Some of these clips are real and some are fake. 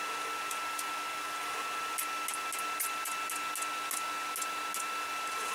real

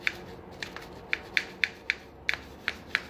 real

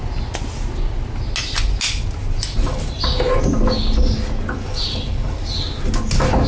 real